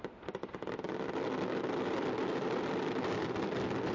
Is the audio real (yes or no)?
yes